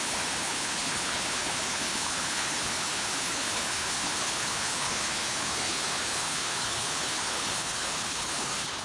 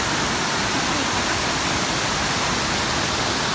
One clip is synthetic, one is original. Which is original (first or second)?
second